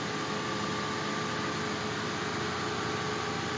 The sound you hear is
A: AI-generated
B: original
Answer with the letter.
B